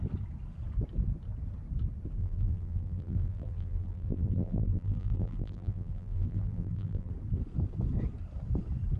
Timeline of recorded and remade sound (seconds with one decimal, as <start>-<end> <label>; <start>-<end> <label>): 0.0-2.2 recorded; 2.2-7.1 remade; 7.1-9.0 recorded